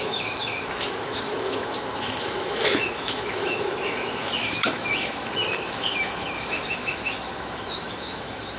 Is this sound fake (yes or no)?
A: yes